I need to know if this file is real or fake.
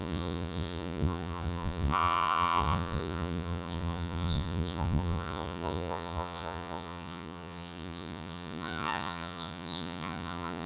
fake